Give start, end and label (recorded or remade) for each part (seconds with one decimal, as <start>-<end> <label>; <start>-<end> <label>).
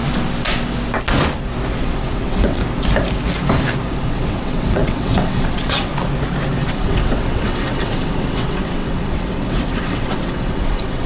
0.0-1.8 recorded; 1.8-2.6 remade; 2.6-4.0 recorded; 4.0-5.9 remade; 5.9-6.7 recorded; 6.7-11.1 remade